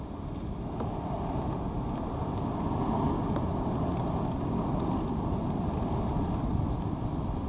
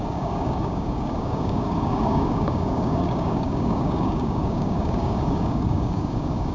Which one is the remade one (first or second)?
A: second